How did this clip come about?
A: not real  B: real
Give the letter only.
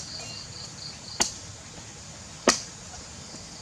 B